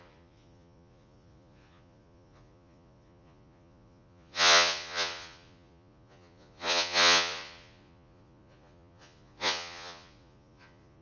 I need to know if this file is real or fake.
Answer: fake